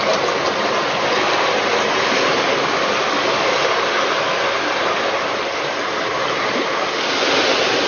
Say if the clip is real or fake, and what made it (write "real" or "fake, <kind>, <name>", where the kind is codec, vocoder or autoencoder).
real